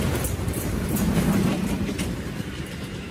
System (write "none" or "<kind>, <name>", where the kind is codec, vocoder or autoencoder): vocoder, BigVGAN v2